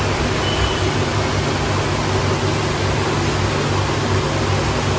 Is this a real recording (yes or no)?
yes